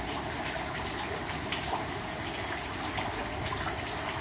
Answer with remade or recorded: recorded